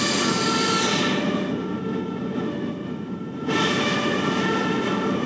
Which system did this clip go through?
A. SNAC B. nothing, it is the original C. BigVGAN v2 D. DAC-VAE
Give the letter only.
B